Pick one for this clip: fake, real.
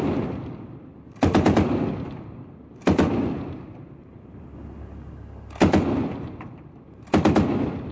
real